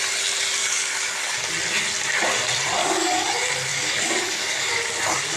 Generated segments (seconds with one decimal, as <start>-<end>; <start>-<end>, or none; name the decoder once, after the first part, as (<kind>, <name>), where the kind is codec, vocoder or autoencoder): 0.6-1.5 (codec, DAC); 2.8-3.3; 3.7-4.7